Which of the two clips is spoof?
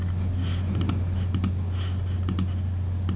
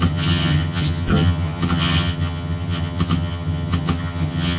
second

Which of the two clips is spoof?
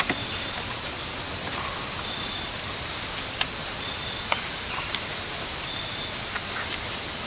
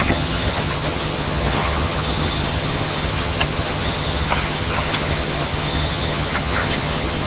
second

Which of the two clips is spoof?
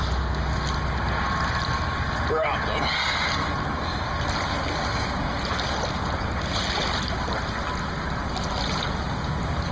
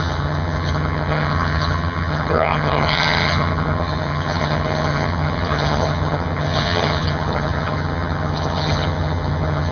second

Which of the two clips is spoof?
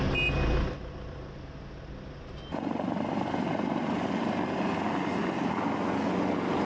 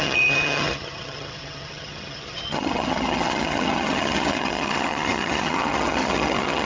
second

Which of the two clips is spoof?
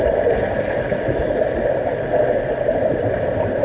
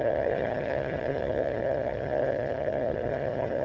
second